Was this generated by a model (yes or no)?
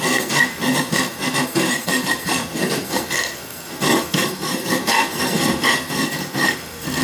yes